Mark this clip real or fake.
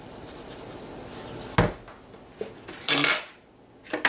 real